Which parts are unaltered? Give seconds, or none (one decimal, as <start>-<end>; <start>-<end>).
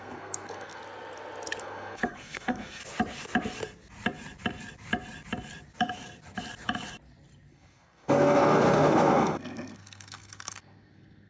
0.8-1.6; 2.8-7.5